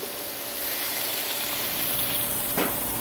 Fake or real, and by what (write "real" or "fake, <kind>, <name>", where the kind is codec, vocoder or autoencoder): fake, vocoder, BigVGAN v2